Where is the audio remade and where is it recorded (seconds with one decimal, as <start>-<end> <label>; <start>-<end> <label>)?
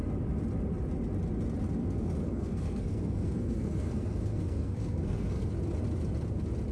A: 0.0-1.8 recorded; 1.8-5.5 remade; 5.5-6.7 recorded